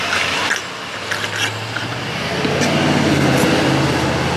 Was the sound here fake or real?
real